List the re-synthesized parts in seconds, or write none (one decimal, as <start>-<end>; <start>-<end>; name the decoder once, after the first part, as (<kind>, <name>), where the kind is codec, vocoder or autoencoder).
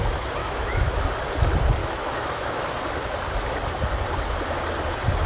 0.4-1.0 (autoencoder, DAC-VAE); 1.8-2.6